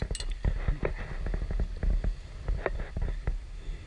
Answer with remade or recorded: recorded